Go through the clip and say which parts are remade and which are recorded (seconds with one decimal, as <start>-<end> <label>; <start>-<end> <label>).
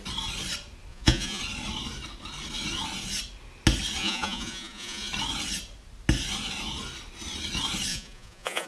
0.0-0.9 recorded; 0.9-1.4 remade; 1.4-4.0 recorded; 4.0-5.1 remade; 5.1-7.9 recorded; 7.9-8.7 remade